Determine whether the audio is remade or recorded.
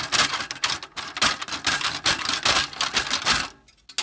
recorded